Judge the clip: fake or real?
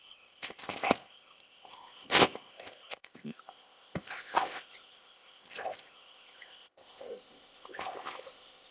fake